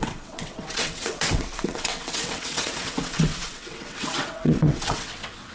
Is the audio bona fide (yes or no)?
no